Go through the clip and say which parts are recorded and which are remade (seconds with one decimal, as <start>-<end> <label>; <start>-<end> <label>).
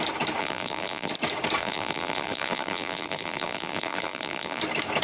0.0-0.4 recorded; 0.4-1.1 remade; 1.1-1.6 recorded; 1.6-4.6 remade; 4.6-5.0 recorded